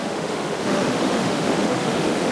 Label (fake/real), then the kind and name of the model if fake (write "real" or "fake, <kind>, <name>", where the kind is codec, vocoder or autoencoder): fake, autoencoder, DAC-VAE